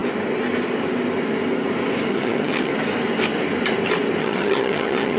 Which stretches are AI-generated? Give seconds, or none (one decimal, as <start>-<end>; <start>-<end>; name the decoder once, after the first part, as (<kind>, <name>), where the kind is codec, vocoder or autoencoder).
2.1-2.7 (vocoder, HiFi-GAN); 4.2-5.2